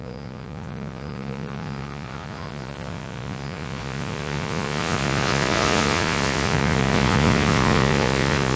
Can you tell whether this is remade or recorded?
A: remade